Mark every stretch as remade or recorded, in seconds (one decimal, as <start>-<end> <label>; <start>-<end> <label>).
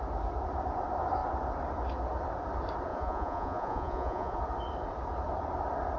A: 0.0-2.9 recorded; 2.9-4.4 remade; 4.4-6.0 recorded